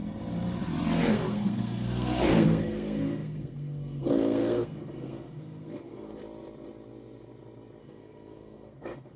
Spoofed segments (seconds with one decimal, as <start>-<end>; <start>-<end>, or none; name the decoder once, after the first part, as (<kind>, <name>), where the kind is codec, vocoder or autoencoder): 1.1-6.2 (codec, SNAC); 7.8-9.2